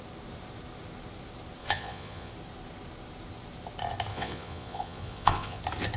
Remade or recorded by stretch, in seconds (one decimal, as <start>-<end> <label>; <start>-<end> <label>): 0.0-1.6 recorded; 1.6-2.3 remade; 2.3-4.1 recorded; 4.1-5.6 remade; 5.6-6.0 recorded